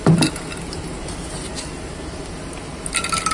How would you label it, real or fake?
real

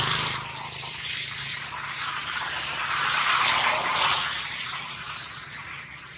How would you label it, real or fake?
real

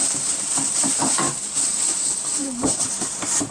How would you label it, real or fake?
fake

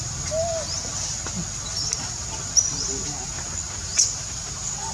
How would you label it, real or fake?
real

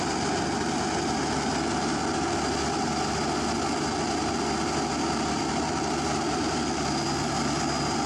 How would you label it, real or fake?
real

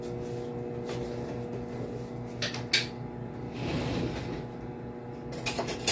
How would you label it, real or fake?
real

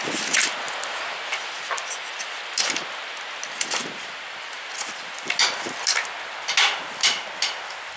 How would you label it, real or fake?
real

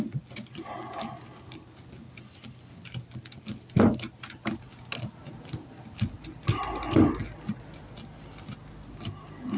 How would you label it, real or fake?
real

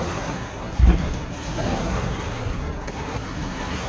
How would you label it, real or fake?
fake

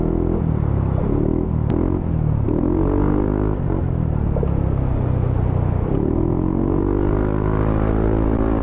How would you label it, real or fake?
real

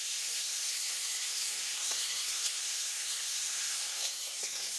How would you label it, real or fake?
fake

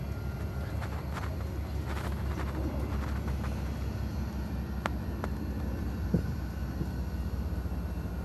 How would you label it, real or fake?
real